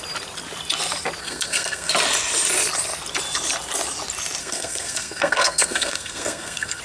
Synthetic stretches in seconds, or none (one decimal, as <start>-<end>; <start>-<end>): 1.2-1.9; 4.4-6.8